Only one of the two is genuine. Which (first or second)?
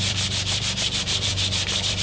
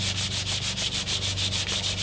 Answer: second